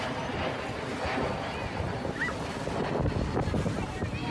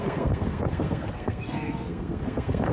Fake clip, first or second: second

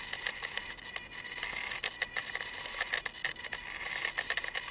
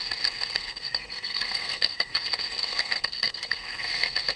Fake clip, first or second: second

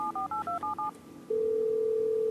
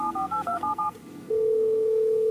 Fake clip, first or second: second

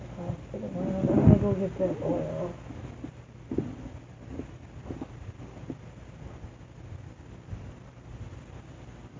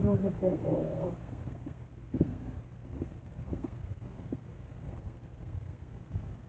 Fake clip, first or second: second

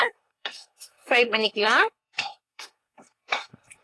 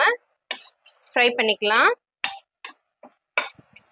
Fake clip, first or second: first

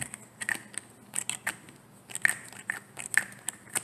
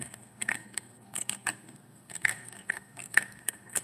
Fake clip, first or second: second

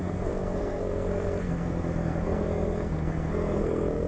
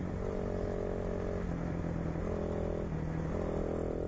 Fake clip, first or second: first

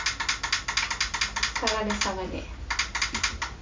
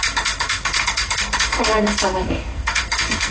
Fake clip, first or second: second